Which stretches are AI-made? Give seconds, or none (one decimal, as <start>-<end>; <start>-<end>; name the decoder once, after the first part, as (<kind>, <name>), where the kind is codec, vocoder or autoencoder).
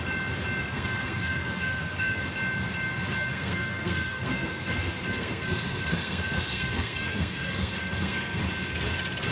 0.6-2.2 (codec, SNAC); 3.3-8.4